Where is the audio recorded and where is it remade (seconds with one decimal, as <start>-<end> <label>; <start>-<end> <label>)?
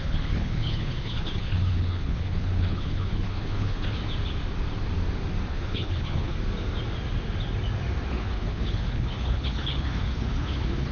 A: 0.0-4.0 remade; 4.0-5.5 recorded; 5.5-6.3 remade; 6.3-8.1 recorded; 8.1-10.9 remade